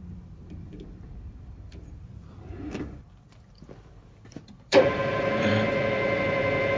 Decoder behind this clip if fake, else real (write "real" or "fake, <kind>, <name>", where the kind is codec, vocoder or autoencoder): fake, vocoder, BigVGAN v2